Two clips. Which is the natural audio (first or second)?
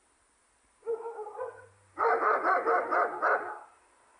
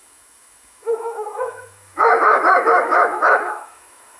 first